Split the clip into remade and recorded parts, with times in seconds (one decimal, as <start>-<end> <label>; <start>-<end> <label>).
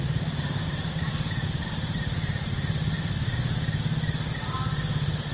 0.0-1.1 remade; 1.1-4.3 recorded; 4.3-5.3 remade